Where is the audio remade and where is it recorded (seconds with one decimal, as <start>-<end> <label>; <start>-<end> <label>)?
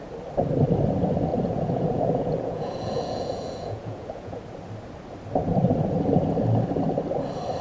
0.0-1.3 recorded; 1.3-4.4 remade; 4.4-7.6 recorded